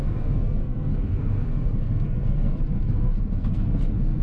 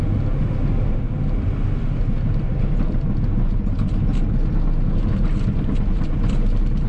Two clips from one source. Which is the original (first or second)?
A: second